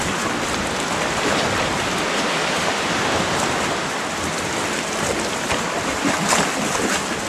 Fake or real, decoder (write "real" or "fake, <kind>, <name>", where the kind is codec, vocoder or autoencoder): real